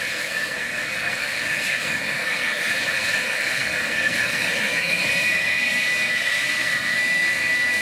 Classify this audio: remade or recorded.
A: remade